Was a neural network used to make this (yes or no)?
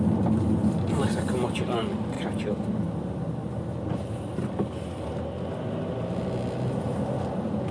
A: no